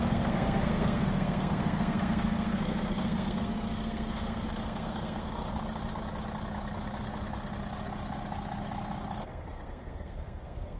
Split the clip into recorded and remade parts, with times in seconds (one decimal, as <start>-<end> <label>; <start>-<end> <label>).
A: 0.0-5.5 remade; 5.5-9.2 recorded; 9.2-10.8 remade